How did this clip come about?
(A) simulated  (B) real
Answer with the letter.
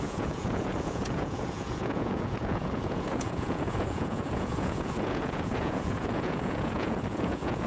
A